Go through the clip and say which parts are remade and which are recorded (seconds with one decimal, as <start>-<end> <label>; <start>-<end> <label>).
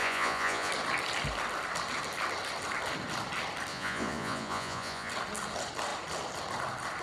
0.0-0.7 remade; 0.7-3.7 recorded; 3.7-5.1 remade; 5.1-7.0 recorded